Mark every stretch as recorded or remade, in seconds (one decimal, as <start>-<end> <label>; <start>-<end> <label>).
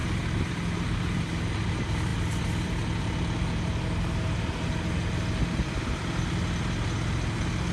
0.0-7.7 recorded